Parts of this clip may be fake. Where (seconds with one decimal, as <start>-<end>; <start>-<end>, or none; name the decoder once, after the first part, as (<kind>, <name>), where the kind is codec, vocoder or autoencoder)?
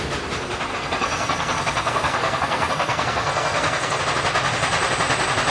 0.7-4.0 (codec, SNAC)